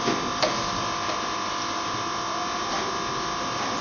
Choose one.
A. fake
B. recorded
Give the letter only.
B